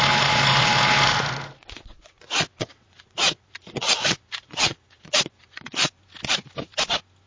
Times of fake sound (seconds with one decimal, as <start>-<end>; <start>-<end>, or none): 1.6-6.0